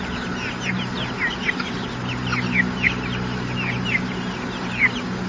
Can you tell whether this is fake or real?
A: real